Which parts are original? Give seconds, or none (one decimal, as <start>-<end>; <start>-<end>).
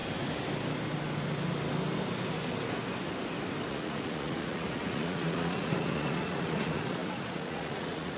0.0-3.7